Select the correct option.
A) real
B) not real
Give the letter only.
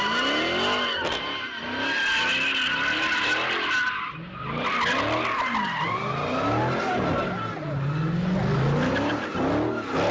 A